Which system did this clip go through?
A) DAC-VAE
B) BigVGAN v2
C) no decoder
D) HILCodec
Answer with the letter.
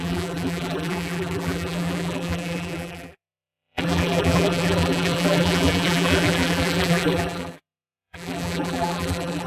B